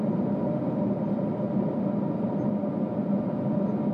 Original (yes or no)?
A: yes